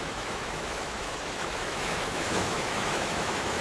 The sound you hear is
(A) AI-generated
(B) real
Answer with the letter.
A